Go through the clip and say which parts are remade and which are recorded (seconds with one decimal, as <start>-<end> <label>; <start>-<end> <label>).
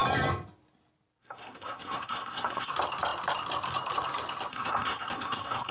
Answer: 0.0-1.2 recorded; 1.2-2.7 remade; 2.7-4.5 recorded; 4.5-5.7 remade